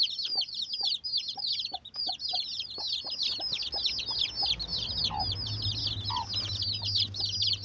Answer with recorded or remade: recorded